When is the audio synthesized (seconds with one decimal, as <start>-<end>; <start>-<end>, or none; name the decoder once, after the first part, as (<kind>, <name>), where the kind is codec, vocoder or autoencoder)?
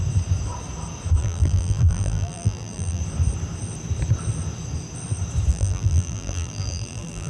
1.2-3.0 (vocoder, BigVGAN v2); 5.5-7.3